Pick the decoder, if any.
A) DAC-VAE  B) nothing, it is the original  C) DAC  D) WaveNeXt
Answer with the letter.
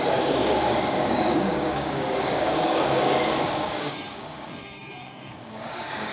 C